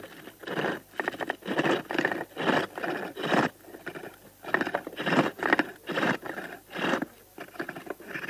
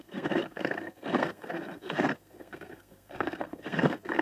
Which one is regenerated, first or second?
second